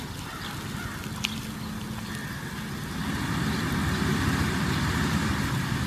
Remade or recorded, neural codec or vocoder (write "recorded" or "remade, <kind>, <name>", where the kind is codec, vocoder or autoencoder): recorded